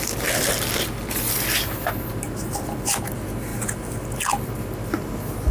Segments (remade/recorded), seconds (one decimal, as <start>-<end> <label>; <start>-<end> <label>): 0.0-5.5 recorded